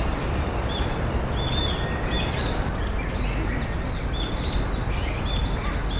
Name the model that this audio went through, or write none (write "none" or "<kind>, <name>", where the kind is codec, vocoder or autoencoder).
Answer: none